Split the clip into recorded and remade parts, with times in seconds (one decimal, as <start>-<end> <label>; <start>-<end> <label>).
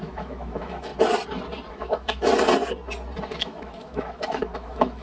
0.0-0.9 remade; 0.9-1.7 recorded; 1.7-2.3 remade; 2.3-3.3 recorded; 3.3-5.0 remade